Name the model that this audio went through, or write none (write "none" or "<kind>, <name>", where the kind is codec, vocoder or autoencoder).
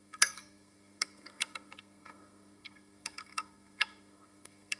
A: codec, SNAC